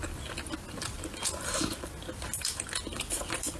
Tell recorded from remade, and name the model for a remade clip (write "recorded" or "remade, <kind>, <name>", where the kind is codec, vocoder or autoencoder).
recorded